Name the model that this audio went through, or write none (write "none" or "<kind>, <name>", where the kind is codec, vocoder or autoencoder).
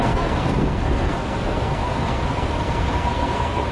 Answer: codec, SNAC